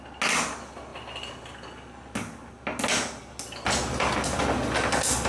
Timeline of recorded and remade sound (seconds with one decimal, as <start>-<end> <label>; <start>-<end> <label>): 0.0-5.3 recorded